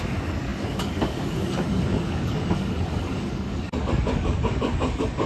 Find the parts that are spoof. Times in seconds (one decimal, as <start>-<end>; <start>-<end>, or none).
0.0-5.3